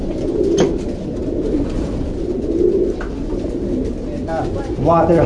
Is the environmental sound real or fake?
real